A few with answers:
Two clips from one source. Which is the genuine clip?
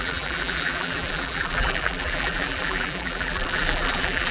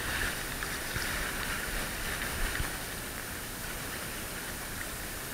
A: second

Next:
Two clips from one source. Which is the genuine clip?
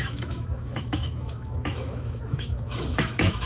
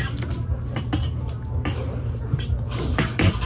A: second